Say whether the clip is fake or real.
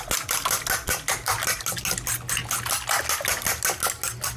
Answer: real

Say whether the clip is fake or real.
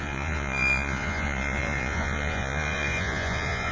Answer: fake